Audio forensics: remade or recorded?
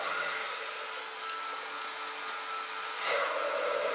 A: recorded